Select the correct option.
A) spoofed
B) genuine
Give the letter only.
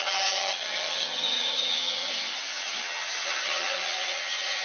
A